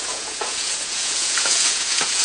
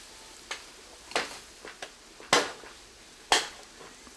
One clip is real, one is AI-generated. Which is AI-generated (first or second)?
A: first